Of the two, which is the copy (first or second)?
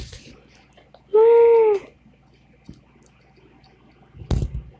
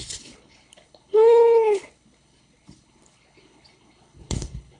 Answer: second